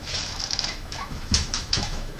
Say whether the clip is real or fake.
fake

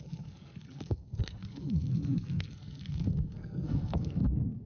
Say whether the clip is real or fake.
fake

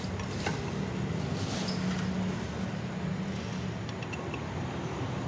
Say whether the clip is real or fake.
real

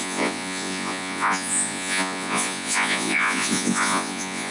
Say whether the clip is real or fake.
fake